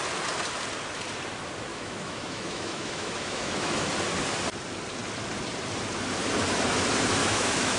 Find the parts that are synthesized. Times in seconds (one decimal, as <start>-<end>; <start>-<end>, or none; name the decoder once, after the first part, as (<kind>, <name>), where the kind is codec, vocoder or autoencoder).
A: 1.7-3.9 (autoencoder, DAC-VAE); 7.2-7.8